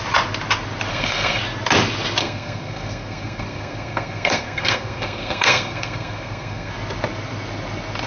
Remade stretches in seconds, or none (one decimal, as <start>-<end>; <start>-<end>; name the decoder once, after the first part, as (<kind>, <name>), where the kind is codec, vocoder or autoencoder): 0.9-1.4 (codec, SNAC); 2.2-6.7